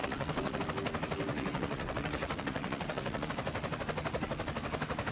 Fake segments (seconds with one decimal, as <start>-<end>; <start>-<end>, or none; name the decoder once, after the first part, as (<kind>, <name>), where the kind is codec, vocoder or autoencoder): 0.0-0.6 (vocoder, WaveNeXt); 1.3-3.3